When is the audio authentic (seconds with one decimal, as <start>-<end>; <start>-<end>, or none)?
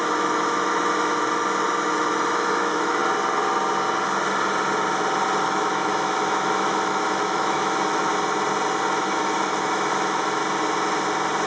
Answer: 3.0-5.4; 8.1-9.0; 10.4-11.5